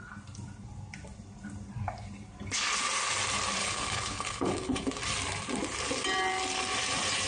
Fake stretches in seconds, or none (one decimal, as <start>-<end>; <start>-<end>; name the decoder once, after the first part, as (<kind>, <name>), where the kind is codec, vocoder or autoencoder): 3.6-4.9 (codec, HILCodec)